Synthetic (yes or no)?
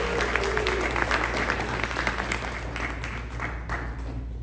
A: no